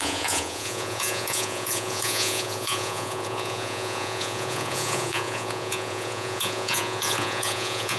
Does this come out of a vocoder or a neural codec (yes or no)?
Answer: yes